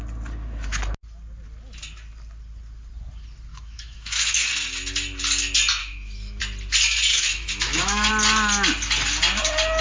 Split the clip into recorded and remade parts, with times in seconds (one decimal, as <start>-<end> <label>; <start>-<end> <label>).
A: 0.0-3.5 recorded; 3.5-4.5 remade; 4.5-5.8 recorded; 5.8-6.4 remade; 6.4-7.1 recorded; 7.1-8.1 remade; 8.1-9.8 recorded